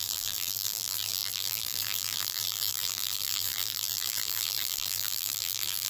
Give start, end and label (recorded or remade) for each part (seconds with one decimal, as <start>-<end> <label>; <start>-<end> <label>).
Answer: 0.0-5.9 remade